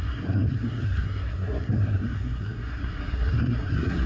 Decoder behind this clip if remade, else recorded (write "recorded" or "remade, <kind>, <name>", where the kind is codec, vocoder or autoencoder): remade, codec, SNAC